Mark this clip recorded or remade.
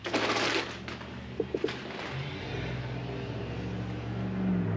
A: recorded